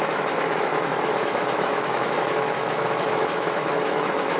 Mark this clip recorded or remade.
remade